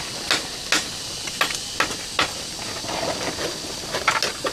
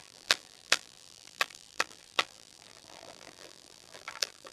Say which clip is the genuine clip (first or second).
first